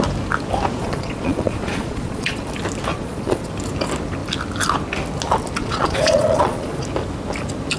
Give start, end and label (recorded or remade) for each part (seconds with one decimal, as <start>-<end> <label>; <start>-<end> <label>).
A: 0.0-0.8 recorded; 0.8-2.4 remade; 2.4-2.9 recorded; 2.9-3.5 remade; 3.5-5.6 recorded; 5.6-6.8 remade; 6.8-7.8 recorded

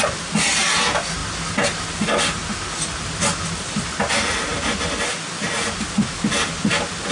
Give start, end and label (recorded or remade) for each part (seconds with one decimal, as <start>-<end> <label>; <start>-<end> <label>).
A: 0.0-7.1 recorded

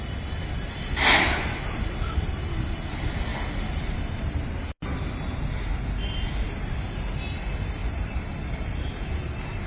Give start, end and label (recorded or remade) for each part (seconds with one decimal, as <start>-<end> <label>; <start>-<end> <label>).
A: 0.0-9.7 recorded

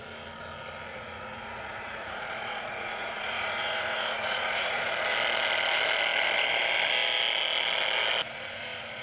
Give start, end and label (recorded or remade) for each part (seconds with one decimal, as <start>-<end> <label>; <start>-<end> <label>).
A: 0.0-0.9 recorded; 0.9-4.9 remade; 4.9-9.0 recorded

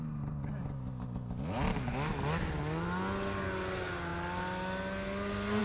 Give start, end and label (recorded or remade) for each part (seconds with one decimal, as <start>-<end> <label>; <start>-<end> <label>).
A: 0.0-5.6 recorded

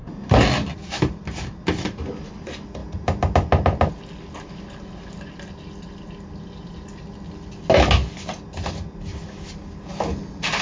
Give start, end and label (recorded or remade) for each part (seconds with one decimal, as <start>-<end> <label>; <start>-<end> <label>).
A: 0.0-10.6 recorded

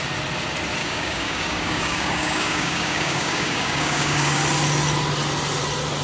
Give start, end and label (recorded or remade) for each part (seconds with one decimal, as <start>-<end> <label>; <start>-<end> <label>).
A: 0.0-0.8 recorded; 0.8-4.4 remade; 4.4-6.0 recorded